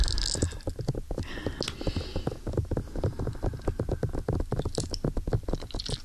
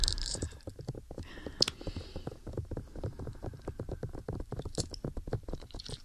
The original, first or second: first